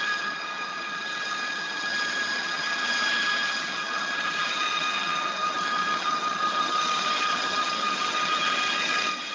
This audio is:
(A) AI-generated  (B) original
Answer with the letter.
A